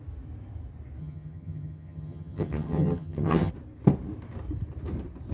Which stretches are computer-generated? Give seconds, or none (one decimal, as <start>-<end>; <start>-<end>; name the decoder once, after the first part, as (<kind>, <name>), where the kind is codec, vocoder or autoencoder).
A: 1.0-3.5 (vocoder, HiFi-GAN)